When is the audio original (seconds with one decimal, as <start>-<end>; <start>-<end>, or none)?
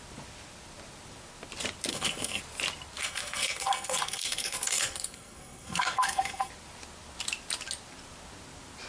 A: 0.0-1.9; 2.4-3.0; 6.5-8.9